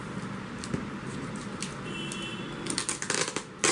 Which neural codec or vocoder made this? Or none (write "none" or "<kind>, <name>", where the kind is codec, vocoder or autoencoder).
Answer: none